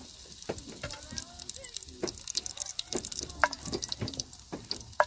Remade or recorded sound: recorded